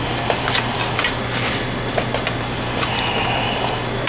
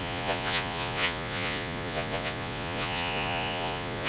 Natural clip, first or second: first